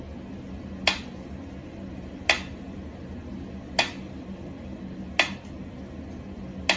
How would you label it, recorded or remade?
recorded